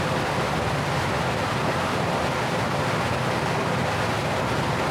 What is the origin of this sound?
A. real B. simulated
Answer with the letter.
A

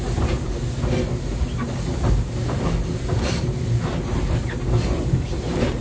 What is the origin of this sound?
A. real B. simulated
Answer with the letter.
A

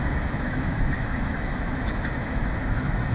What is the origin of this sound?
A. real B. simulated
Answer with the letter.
B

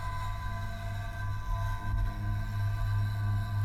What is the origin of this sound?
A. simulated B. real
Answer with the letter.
B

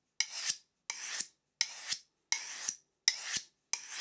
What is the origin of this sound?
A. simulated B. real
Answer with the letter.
B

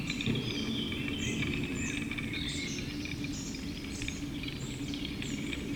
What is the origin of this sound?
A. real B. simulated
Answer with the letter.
A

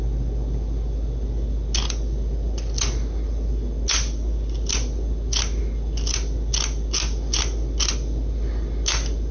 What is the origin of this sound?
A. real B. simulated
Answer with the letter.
A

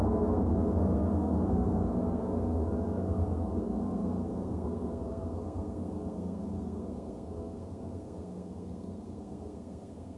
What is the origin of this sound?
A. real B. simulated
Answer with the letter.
B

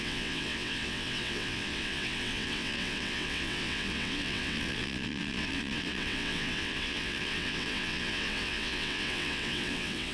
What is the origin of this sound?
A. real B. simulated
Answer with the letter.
B